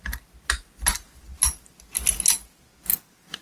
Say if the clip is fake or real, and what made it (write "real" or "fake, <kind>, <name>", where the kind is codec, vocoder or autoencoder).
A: real